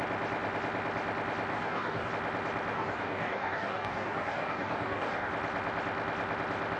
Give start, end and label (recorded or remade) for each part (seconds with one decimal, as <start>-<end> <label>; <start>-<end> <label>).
0.0-1.5 recorded; 1.5-2.1 remade; 2.1-2.7 recorded; 2.7-5.3 remade; 5.3-6.8 recorded